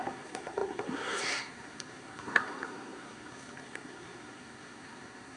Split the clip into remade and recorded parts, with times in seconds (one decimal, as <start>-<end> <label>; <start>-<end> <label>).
0.0-5.4 remade